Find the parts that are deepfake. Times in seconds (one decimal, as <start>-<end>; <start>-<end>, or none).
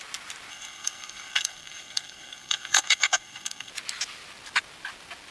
0.5-3.7